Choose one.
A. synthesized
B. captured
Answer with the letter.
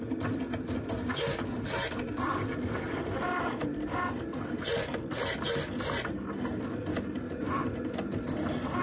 B